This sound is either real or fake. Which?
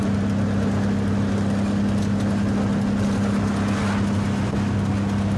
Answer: real